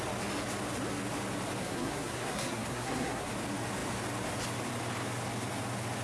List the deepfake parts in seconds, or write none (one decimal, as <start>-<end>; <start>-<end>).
1.6-3.3